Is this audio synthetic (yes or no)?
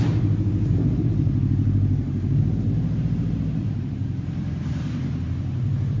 yes